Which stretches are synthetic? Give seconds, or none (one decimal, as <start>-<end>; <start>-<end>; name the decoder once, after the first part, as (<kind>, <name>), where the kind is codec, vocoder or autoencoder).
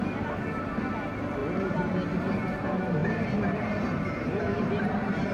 3.0-5.3 (vocoder, BigVGAN v2)